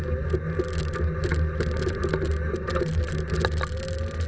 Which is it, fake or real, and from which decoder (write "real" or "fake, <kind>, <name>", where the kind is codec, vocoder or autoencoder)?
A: real